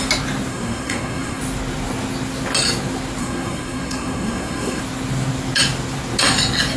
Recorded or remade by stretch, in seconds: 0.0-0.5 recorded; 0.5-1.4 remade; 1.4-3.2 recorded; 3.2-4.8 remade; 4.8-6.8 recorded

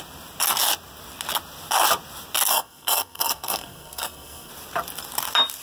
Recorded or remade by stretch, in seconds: 0.0-2.5 recorded; 2.5-4.5 remade; 4.5-5.6 recorded

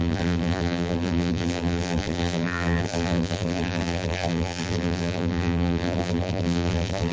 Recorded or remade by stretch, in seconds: 0.0-7.1 remade

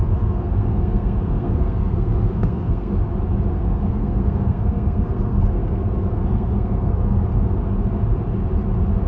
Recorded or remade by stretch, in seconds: 0.0-2.9 remade; 2.9-3.5 recorded; 3.5-7.3 remade; 7.3-9.1 recorded

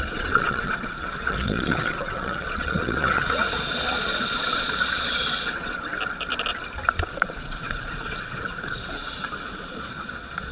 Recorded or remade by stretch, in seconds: 0.0-5.9 remade; 5.9-7.1 recorded; 7.1-10.5 remade

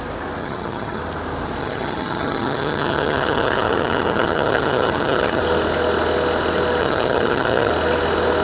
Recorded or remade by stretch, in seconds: 0.0-0.4 recorded; 0.4-1.0 remade; 1.0-1.6 recorded; 1.6-5.4 remade; 5.4-6.8 recorded; 6.8-7.7 remade; 7.7-8.4 recorded

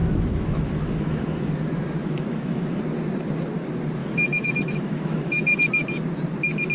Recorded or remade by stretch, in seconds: 0.0-1.5 remade; 1.5-2.0 recorded; 2.0-2.8 remade; 2.8-4.0 recorded; 4.0-5.6 remade; 5.6-6.7 recorded

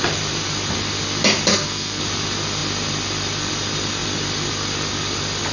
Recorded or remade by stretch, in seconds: 0.0-1.5 recorded; 1.5-2.0 remade; 2.0-5.5 recorded